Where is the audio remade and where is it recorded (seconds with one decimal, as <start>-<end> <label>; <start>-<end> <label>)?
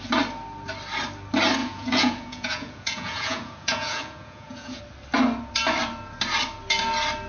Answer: 0.0-1.6 recorded; 1.6-4.8 remade; 4.8-7.3 recorded